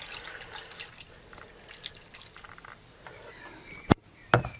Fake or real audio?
real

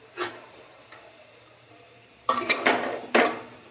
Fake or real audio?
fake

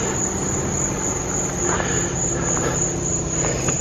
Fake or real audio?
real